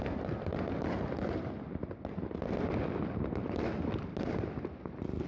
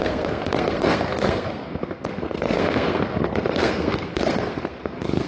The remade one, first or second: second